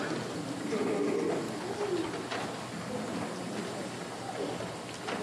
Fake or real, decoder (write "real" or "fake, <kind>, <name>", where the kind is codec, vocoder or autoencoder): real